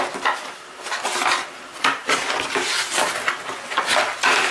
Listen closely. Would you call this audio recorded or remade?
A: recorded